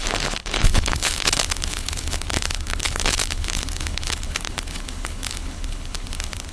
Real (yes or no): no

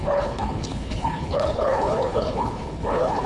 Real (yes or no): no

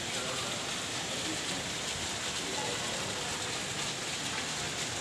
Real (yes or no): yes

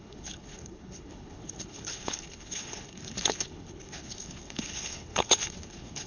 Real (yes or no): no